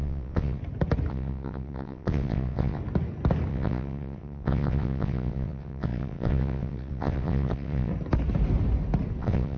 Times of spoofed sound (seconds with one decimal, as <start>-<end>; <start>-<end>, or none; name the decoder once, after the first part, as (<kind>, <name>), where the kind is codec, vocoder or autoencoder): 0.0-0.6 (vocoder, WaveNeXt); 1.1-2.8; 3.5-7.9; 9.2-9.6

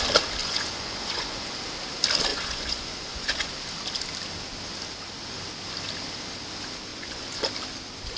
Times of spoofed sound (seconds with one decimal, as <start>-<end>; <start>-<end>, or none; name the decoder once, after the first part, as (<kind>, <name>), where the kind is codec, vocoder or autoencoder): 0.4-1.6 (vocoder, Vocos); 2.3-3.5; 6.9-7.5